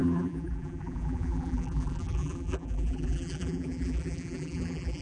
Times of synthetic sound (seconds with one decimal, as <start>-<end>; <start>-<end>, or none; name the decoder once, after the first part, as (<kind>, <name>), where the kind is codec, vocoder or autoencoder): 0.0-5.0 (vocoder, BigVGAN v2)